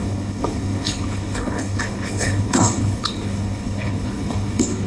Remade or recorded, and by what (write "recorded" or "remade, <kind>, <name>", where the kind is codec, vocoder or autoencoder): remade, codec, HILCodec